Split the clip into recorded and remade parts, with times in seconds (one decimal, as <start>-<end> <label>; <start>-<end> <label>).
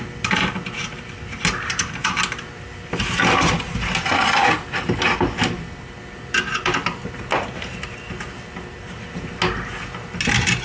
0.0-10.6 recorded